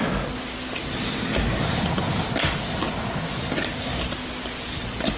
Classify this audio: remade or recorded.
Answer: recorded